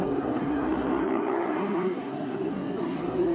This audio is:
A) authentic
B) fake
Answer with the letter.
B